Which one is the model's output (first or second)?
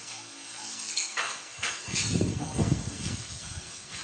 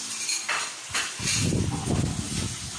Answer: first